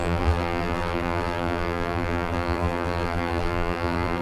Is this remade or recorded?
remade